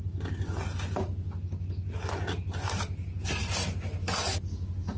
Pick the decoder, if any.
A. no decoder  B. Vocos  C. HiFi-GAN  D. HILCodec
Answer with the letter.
A